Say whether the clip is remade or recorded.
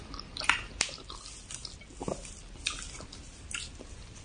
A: recorded